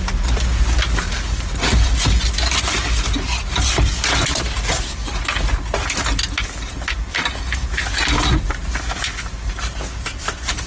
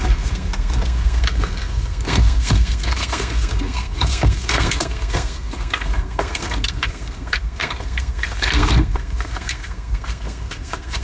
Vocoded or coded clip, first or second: second